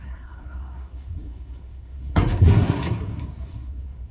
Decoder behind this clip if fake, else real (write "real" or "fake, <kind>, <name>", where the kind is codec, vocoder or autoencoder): fake, codec, SNAC